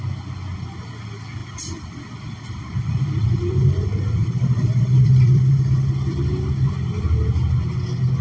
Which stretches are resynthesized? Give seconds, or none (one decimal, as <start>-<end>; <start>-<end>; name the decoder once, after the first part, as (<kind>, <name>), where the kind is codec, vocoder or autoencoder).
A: 1.4-6.3 (vocoder, BigVGAN v2)